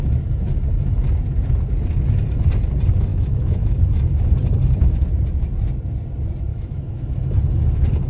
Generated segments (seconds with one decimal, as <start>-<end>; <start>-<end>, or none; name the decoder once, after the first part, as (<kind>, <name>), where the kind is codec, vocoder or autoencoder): 3.1-3.8 (autoencoder, DAC-VAE); 6.5-7.1